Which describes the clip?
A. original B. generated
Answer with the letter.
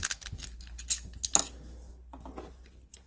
A